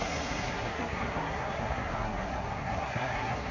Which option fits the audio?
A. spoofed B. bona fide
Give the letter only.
A